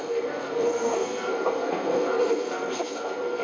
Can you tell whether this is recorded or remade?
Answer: remade